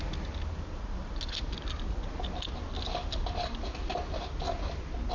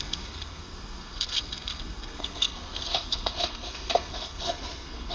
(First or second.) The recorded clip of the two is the first